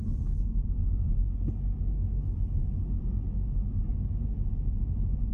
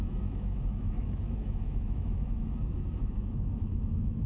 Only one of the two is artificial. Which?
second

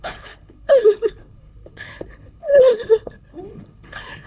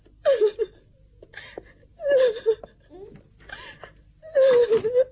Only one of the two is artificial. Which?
first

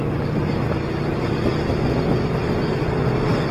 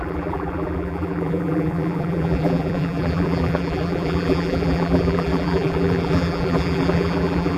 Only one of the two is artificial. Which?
second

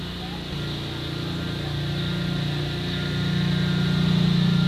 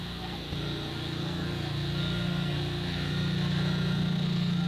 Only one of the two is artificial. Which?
second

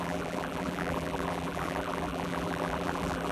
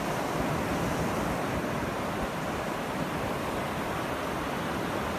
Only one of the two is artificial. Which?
first